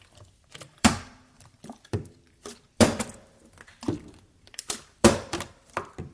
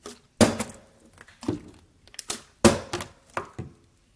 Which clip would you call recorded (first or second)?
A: second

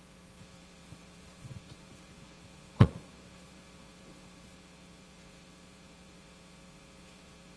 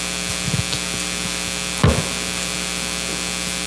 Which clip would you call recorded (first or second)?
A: second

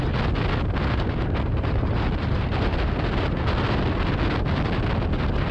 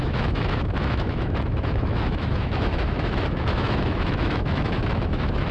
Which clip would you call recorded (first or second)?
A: first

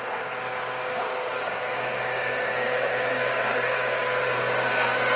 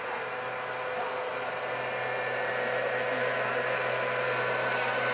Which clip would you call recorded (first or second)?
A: second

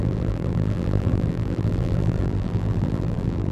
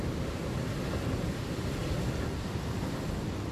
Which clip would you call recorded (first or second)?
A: second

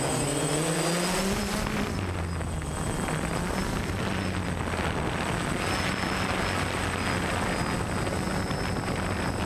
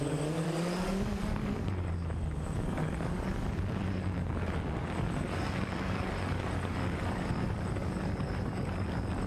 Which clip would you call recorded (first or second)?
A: first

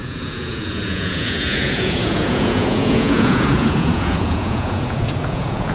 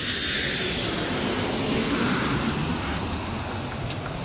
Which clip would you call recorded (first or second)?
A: second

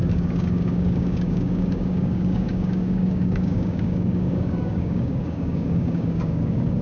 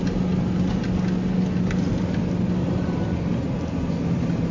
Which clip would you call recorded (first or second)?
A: second